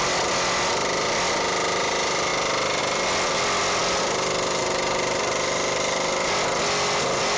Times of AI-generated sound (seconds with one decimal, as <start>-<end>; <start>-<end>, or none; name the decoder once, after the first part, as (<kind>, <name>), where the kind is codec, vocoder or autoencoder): none